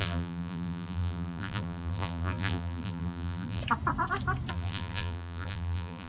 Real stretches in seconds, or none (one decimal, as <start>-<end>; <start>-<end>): 3.6-4.5